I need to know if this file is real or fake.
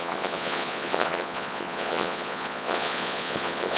fake